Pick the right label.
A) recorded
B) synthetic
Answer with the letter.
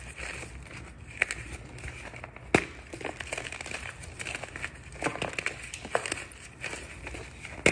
A